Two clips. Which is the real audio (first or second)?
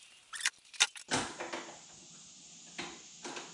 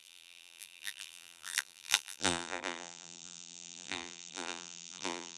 first